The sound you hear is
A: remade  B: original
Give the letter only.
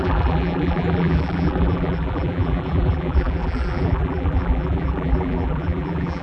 A